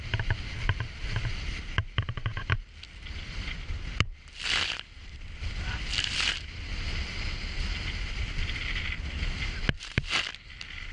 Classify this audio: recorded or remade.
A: recorded